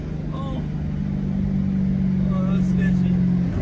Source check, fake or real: real